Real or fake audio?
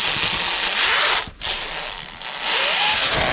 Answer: real